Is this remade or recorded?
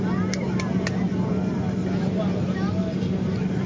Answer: recorded